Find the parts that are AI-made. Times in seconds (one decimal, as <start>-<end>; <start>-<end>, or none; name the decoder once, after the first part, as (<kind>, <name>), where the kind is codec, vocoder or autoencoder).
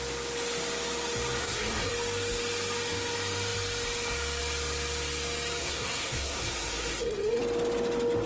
1.4-1.9 (codec, SNAC); 5.6-7.4